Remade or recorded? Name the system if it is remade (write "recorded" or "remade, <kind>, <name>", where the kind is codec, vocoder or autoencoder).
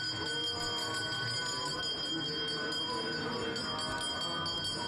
recorded